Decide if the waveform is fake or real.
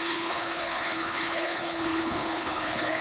fake